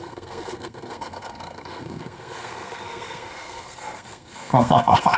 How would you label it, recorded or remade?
remade